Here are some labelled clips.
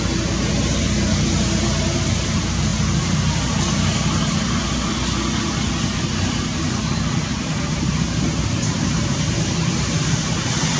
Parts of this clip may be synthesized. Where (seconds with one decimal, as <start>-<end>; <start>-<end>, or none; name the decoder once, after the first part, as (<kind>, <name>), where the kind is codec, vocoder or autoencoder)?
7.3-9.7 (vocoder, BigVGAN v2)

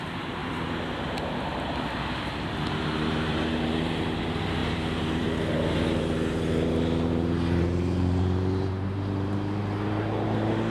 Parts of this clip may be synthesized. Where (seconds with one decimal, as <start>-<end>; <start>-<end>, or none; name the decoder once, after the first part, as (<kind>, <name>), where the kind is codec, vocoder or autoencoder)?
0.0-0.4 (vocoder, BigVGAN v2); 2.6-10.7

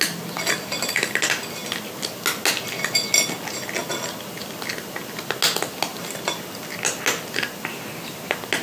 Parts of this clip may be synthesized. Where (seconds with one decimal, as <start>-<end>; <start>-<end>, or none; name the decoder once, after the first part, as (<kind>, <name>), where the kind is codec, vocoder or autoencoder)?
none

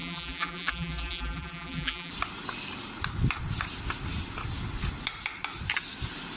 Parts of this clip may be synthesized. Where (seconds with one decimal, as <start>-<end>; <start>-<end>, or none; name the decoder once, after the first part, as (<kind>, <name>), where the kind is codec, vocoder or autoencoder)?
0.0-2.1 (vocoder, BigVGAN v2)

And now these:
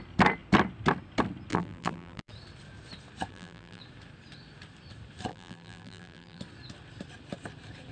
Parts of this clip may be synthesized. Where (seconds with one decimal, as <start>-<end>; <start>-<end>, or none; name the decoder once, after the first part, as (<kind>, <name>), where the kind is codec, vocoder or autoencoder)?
1.5-2.3 (vocoder, BigVGAN v2); 3.3-3.8; 5.3-6.4

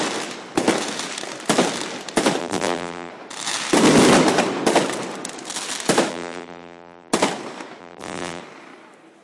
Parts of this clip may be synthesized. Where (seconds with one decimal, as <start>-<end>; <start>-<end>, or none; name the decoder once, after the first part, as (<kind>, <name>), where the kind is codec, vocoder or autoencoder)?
2.4-3.1 (vocoder, BigVGAN v2); 6.1-7.1; 7.8-8.4